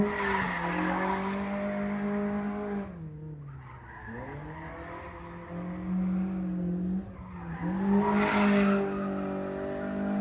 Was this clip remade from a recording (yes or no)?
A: no